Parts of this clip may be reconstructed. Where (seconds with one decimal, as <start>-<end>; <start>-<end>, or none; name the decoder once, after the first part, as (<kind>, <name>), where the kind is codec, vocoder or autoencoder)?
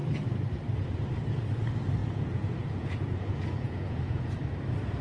2.0-4.3 (vocoder, Vocos)